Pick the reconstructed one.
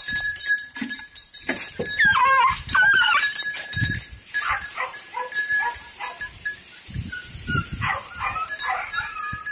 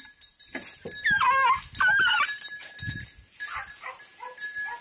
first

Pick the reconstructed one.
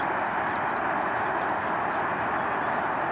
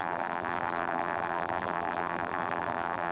second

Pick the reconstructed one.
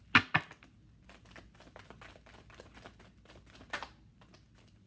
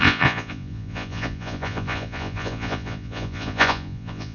second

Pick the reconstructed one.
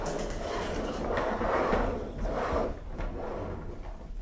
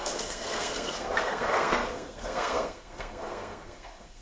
second